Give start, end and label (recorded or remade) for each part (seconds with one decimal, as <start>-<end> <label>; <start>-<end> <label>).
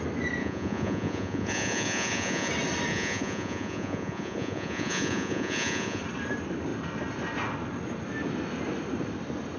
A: 0.0-0.4 recorded; 0.4-2.5 remade; 2.5-2.9 recorded; 2.9-6.0 remade; 6.0-9.6 recorded